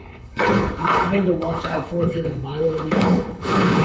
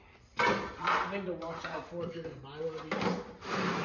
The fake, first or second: first